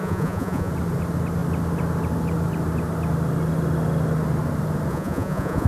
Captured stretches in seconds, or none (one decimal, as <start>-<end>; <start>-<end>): 0.7-4.9